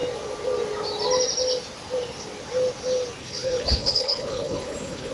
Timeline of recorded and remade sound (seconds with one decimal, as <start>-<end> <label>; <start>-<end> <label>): 0.0-3.2 recorded; 3.2-5.1 remade